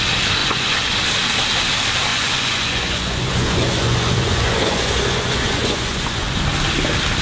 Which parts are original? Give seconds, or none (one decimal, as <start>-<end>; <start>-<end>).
0.0-0.4; 1.0-2.1; 6.4-7.2